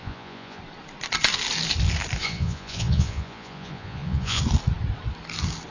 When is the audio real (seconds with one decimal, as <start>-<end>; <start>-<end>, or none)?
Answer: 0.6-2.2; 4.4-5.7